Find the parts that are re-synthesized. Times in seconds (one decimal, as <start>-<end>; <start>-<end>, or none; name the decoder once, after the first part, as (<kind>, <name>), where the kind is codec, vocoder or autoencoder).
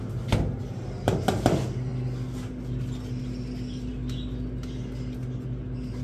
none